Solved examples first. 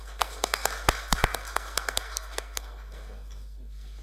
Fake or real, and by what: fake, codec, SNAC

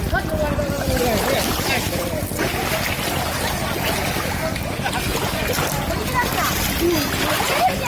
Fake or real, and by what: real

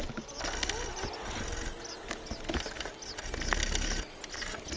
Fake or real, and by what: real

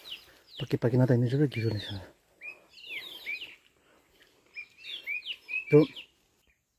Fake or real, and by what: real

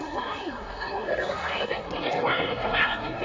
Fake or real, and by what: fake, codec, SNAC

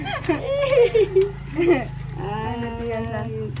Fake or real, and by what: real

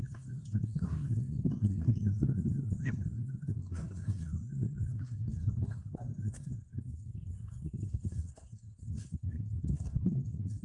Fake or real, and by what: fake, codec, SNAC